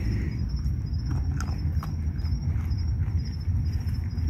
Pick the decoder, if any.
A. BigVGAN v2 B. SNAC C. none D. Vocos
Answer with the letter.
C